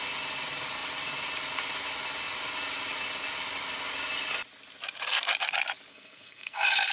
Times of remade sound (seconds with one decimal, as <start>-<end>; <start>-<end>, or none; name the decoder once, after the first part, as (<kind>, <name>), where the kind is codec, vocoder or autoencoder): 5.9-6.9 (codec, SNAC)

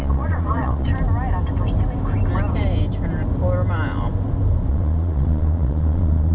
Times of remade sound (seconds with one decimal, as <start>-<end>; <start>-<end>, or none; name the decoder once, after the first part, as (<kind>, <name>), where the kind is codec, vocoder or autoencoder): 0.0-0.9 (vocoder, Vocos); 4.7-6.3

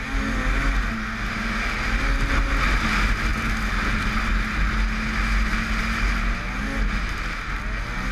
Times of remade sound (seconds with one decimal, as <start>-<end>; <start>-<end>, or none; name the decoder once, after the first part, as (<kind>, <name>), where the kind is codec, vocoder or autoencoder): none

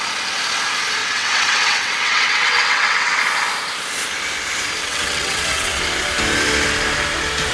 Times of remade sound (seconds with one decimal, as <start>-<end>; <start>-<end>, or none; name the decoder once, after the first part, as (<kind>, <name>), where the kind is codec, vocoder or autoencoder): 1.0-3.2 (vocoder, WaveNeXt); 4.8-5.8

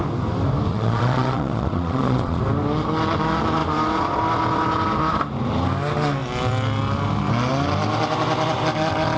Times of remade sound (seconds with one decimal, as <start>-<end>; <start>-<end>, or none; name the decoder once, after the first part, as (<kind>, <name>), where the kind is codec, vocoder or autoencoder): 0.7-2.4 (vocoder, Vocos)

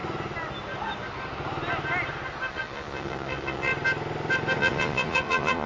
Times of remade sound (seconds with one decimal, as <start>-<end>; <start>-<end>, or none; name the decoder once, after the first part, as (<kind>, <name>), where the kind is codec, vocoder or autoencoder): 2.5-3.7 (vocoder, Vocos); 4.6-5.7

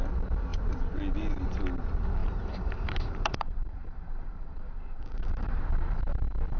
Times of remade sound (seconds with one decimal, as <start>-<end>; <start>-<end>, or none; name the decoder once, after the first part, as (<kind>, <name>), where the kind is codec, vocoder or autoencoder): 2.2-5.6 (vocoder, BigVGAN v2)